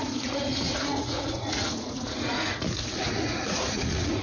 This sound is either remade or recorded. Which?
remade